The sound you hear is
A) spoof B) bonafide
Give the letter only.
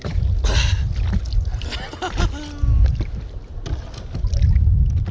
B